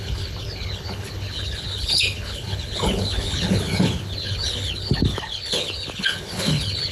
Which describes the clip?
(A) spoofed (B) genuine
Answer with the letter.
A